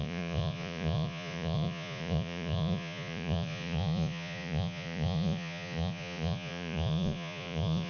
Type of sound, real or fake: fake